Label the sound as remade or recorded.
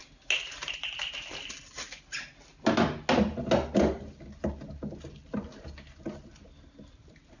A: recorded